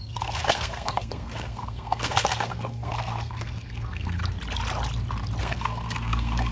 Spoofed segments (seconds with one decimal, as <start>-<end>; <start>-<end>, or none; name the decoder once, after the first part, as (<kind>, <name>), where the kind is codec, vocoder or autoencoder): 0.0-4.2 (codec, SNAC); 5.4-6.5